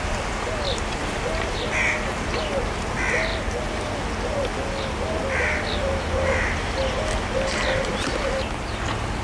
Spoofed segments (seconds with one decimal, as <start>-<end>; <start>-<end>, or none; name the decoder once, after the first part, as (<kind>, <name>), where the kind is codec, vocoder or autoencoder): none